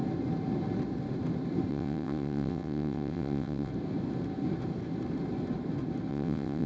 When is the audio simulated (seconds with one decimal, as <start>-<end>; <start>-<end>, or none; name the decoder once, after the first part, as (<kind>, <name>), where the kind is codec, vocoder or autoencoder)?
1.7-3.7 (vocoder, WaveNeXt); 6.1-6.7